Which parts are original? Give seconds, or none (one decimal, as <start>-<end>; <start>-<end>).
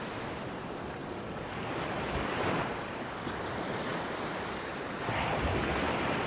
0.0-1.0; 2.3-2.8; 3.4-6.3